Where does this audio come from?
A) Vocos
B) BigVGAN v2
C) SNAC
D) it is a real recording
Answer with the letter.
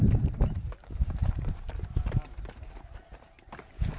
B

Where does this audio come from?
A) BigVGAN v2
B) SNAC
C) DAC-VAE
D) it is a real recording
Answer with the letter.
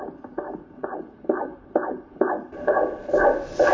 D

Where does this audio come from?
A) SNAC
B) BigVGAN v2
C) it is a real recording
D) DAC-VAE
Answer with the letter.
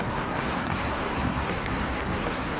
A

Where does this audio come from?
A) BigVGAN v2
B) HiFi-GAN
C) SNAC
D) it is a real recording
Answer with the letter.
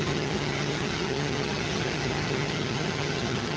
B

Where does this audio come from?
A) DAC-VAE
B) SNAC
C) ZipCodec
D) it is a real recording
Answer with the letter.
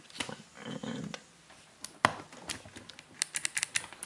D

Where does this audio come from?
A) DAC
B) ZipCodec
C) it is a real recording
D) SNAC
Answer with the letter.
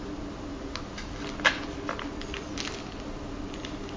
C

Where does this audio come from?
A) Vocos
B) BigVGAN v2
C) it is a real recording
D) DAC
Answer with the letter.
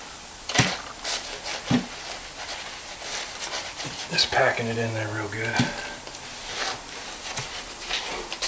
C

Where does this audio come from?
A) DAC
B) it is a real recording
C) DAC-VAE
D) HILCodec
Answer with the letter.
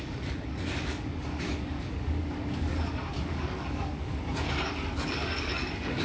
A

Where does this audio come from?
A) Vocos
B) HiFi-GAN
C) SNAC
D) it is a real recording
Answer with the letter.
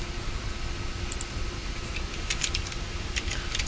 D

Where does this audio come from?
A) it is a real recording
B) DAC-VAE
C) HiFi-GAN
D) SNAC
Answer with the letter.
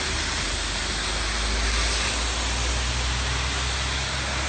A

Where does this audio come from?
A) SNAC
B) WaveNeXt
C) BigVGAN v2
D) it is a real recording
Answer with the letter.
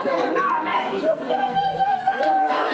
A